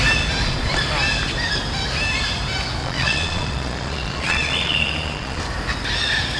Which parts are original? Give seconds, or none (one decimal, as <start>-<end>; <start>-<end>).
0.0-2.8; 5.4-6.4